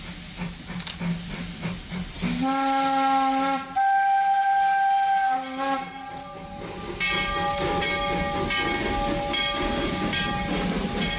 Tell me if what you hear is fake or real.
real